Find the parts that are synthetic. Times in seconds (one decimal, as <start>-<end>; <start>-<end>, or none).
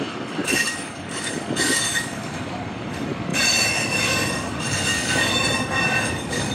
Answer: 0.0-6.5